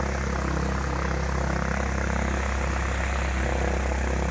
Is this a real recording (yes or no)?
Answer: yes